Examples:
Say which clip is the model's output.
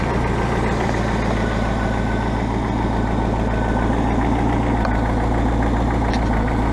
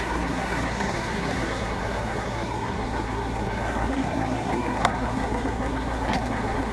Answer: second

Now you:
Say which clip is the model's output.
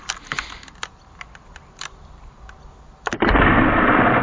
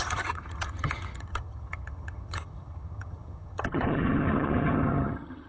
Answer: second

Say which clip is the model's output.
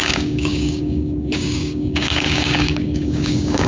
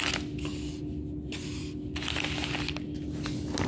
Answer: first